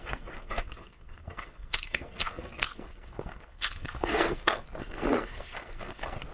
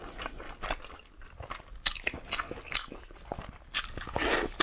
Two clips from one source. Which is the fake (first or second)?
first